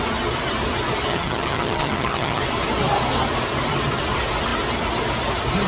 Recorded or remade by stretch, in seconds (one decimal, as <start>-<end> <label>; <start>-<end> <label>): 0.0-1.1 recorded; 1.1-2.4 remade; 2.4-5.7 recorded